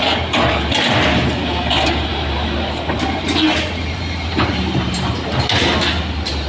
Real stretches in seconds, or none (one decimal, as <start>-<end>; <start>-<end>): 0.0-2.1; 5.8-6.5

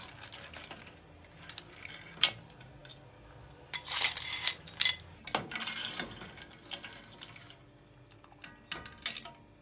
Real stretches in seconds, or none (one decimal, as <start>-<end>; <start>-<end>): 0.0-9.6

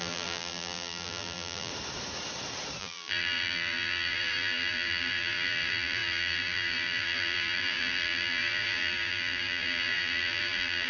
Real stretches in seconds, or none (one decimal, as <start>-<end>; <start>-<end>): 1.7-2.8